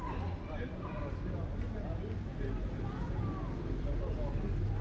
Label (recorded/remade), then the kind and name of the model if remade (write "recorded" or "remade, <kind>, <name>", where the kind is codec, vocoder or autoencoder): recorded